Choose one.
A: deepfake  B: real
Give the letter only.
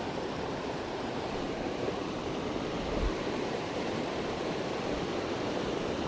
A